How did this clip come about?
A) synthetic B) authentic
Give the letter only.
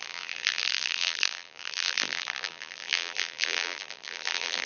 A